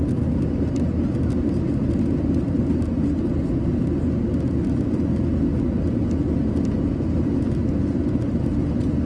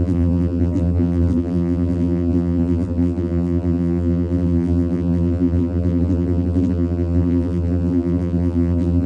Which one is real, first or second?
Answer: first